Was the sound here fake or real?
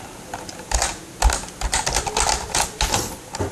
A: real